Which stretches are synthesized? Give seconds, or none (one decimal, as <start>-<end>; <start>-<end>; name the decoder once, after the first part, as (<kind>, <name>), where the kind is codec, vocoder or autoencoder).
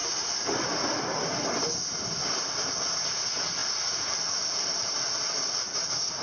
3.6-4.9 (vocoder, BigVGAN v2)